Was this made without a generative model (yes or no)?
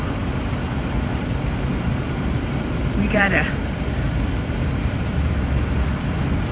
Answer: no